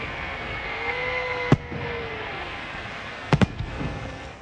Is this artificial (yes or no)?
yes